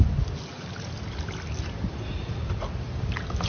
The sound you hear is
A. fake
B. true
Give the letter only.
B